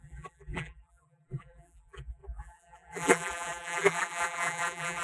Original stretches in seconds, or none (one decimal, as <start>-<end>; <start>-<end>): none